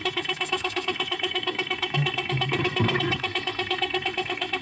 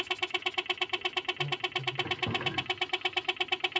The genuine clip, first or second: second